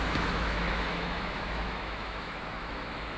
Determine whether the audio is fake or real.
fake